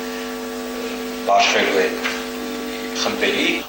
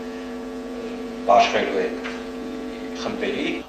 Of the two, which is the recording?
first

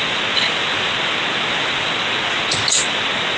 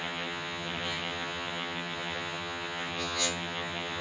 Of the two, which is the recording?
first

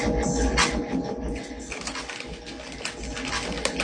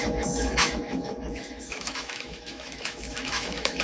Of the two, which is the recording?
first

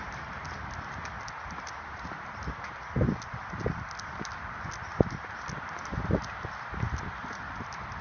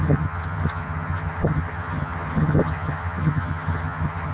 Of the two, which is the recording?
first